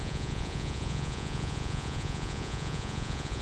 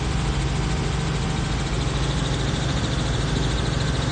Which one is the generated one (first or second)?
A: first